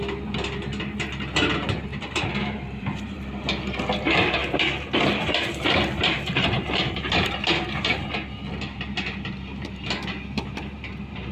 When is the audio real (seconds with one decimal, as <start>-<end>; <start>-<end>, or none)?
0.0-1.9; 3.2-4.4; 8.1-11.3